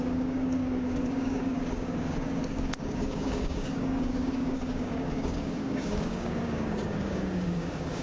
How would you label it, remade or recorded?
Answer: remade